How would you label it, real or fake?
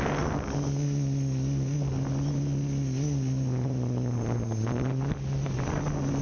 real